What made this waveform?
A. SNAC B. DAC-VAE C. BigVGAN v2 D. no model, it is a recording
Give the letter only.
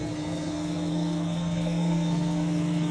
A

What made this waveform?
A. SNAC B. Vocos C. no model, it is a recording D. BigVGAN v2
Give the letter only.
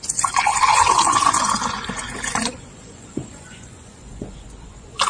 B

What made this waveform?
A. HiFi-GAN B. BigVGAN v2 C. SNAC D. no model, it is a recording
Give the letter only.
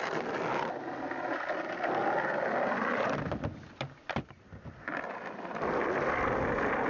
D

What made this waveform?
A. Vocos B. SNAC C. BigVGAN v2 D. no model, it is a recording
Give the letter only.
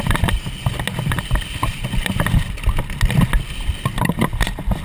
D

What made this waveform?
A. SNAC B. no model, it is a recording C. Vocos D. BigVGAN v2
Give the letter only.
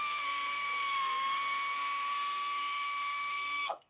A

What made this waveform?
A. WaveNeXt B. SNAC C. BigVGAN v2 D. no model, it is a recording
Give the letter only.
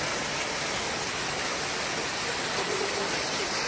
D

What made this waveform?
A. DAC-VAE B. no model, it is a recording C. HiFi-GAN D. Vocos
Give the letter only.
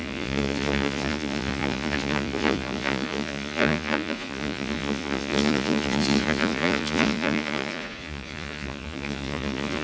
D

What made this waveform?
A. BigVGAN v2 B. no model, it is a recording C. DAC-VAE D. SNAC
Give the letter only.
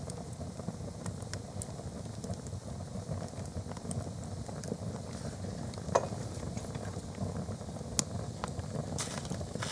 B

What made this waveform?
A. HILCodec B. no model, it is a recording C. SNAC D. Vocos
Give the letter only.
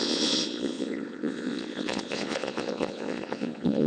D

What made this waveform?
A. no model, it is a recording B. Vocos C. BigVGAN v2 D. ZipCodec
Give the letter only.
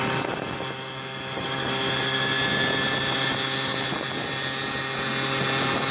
A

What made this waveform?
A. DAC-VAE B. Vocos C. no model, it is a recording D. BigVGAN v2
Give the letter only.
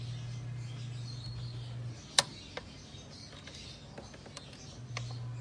C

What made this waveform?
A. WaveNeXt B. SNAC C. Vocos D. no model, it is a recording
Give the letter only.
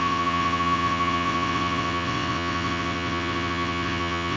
A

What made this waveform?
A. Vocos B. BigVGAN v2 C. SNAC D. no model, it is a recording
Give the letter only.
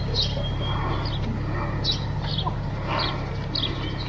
D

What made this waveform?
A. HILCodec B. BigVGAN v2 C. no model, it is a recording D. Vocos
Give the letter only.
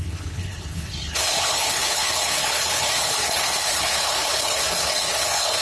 A